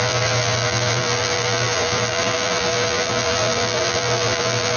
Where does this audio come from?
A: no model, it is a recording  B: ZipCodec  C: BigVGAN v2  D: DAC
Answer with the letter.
C